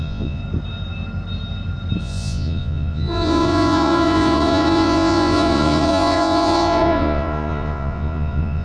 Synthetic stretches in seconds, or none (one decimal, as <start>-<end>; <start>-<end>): 0.0-0.4; 2.0-8.6